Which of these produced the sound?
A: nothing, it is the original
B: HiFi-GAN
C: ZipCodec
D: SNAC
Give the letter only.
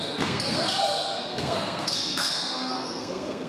D